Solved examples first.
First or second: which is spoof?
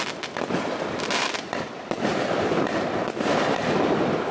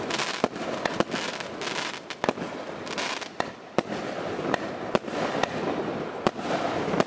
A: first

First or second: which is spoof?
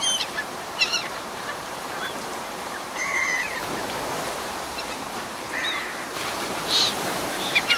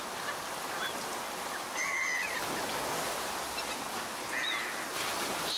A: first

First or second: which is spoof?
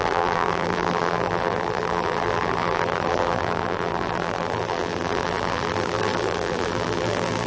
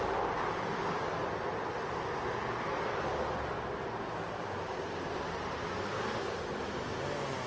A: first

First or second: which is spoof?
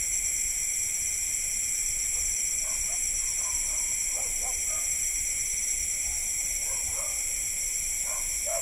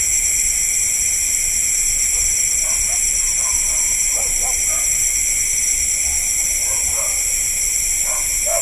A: first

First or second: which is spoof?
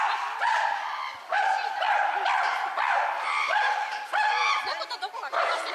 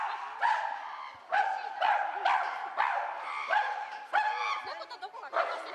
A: first